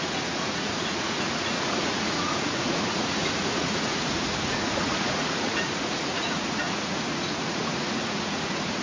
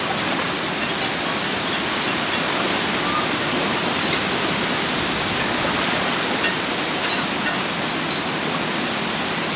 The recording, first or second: second